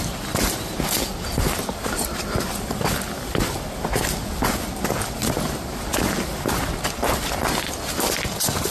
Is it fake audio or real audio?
real